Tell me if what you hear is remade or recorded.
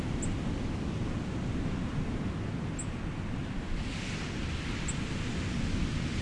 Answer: recorded